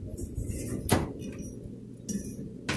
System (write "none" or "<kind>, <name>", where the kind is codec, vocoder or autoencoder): none